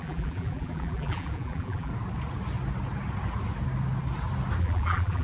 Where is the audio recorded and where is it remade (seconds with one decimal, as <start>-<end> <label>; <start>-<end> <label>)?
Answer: 0.0-1.9 remade; 1.9-4.6 recorded; 4.6-5.2 remade